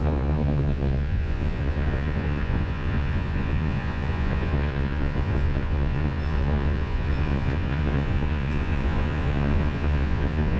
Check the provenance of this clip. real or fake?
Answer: fake